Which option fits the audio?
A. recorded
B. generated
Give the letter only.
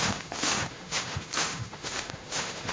B